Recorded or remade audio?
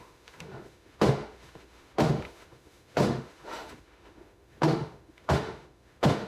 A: remade